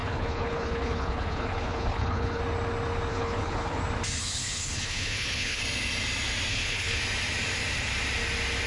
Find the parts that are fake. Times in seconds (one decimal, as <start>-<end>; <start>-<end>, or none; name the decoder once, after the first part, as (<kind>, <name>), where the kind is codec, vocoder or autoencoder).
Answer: 0.0-2.4 (codec, HILCodec); 3.1-3.8; 4.2-5.6; 6.5-7.0

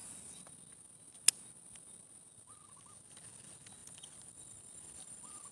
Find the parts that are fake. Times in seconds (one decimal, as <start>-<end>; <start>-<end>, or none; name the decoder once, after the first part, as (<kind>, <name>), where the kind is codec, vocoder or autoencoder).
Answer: none

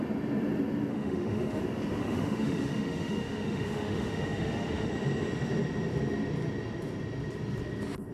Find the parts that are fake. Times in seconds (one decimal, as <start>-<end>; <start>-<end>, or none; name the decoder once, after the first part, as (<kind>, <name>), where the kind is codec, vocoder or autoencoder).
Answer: 0.9-1.6 (autoencoder, DAC-VAE); 2.0-4.9

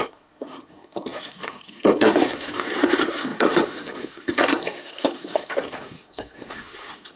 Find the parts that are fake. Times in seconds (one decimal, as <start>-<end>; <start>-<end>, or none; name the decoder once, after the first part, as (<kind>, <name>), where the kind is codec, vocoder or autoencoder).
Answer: 0.0-7.2 (codec, SNAC)

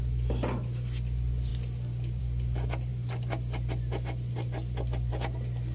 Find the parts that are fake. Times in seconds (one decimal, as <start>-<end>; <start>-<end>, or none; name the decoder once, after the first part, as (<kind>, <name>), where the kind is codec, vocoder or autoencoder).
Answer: none